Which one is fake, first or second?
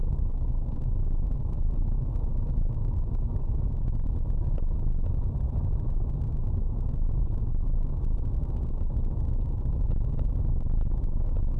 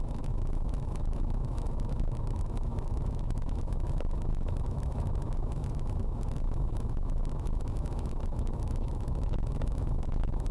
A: second